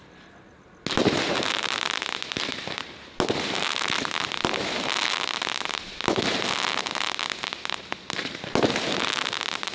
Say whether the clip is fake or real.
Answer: real